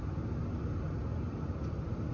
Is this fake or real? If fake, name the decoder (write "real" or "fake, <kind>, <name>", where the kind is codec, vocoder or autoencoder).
real